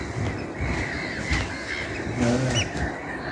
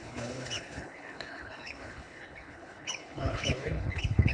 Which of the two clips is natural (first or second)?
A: first